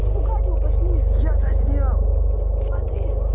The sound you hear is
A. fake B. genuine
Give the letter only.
B